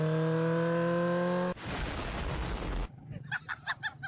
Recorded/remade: recorded